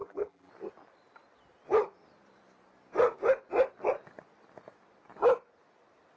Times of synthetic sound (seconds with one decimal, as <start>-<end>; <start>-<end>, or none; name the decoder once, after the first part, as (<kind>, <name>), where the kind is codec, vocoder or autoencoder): 0.0-0.5 (vocoder, BigVGAN v2)